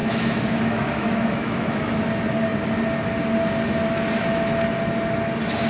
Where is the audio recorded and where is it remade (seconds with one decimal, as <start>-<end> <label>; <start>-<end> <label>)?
0.0-2.0 remade; 2.0-5.7 recorded